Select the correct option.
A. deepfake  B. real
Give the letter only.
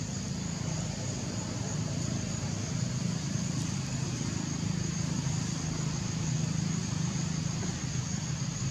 A